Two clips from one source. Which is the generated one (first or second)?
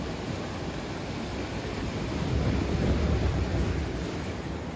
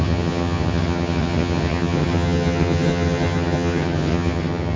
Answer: second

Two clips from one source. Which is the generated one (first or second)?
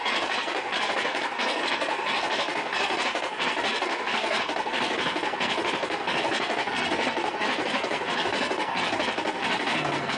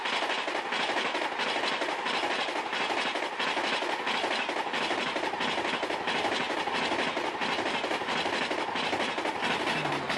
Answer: first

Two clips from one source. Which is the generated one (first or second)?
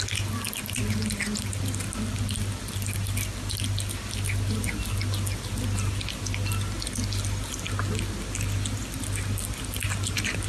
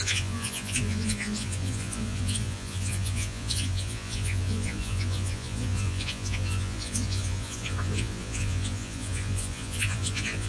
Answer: second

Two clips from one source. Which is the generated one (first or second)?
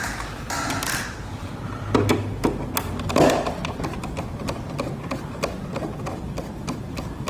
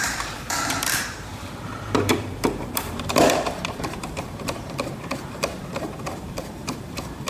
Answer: second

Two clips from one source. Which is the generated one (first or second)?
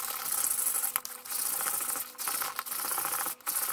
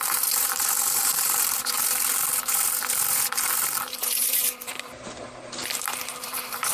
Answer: second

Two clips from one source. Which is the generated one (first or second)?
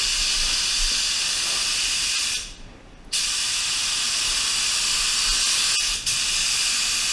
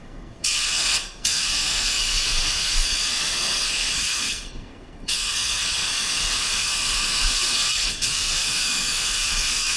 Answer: second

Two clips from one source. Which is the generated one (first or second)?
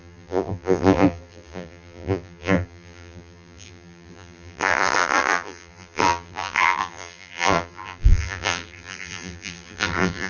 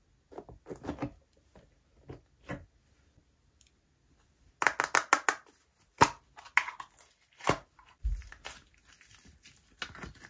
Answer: first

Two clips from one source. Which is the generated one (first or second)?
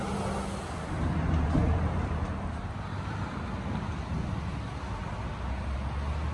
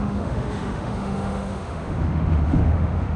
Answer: second